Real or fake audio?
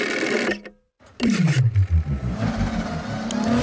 real